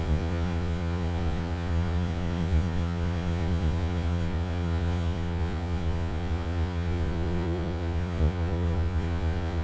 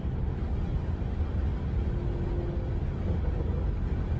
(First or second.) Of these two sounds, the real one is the second